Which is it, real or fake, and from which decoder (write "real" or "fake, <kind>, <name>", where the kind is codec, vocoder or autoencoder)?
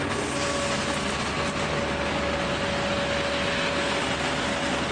real